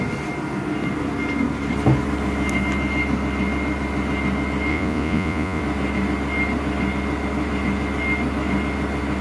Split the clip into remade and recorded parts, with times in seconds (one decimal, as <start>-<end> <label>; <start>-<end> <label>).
0.0-4.7 recorded; 4.7-5.6 remade; 5.6-9.2 recorded